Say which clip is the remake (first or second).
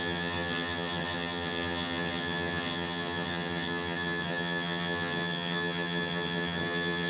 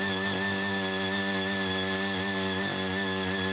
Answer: first